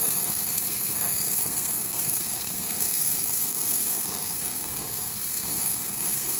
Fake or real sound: fake